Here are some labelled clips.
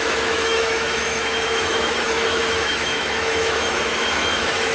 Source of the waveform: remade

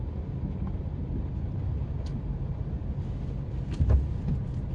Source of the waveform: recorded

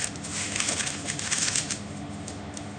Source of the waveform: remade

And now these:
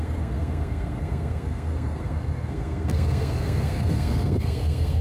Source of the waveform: remade